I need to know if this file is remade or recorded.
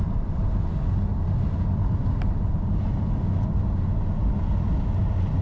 recorded